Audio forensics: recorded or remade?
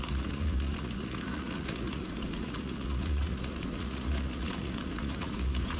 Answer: remade